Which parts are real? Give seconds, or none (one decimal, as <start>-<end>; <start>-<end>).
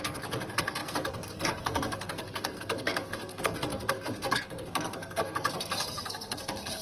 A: none